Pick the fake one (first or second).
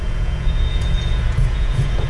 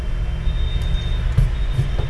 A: first